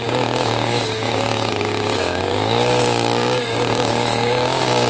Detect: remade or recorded remade